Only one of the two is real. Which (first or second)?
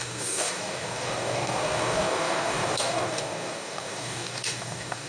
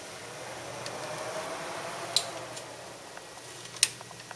second